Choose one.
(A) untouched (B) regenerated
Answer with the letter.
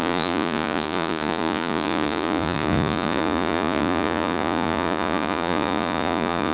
B